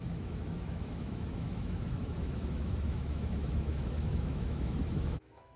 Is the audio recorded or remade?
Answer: remade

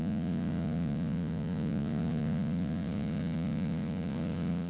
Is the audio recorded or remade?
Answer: remade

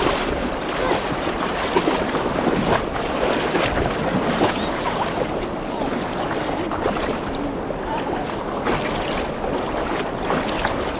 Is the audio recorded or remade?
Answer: recorded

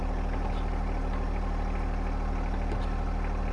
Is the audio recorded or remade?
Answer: recorded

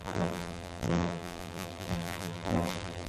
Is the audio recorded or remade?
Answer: remade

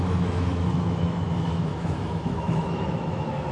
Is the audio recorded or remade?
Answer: remade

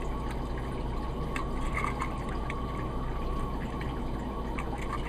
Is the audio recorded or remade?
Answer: recorded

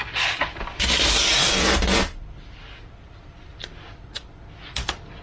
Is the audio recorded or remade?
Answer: recorded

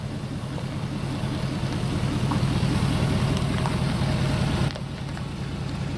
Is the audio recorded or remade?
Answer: recorded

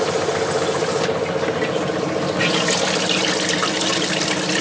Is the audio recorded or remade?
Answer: recorded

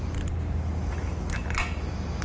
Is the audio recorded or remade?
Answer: recorded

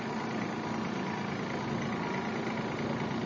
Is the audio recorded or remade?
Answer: recorded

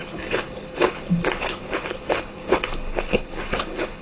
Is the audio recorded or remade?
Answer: remade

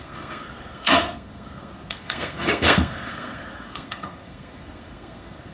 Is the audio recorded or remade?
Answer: remade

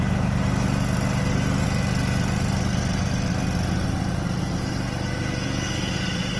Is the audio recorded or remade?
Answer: recorded